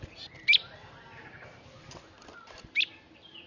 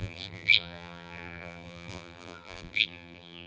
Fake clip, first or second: second